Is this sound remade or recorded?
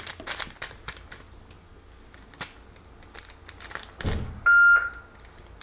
recorded